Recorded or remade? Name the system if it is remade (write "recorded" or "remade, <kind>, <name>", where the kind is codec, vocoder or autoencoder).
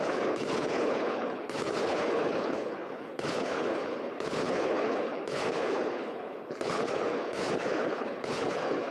remade, codec, HILCodec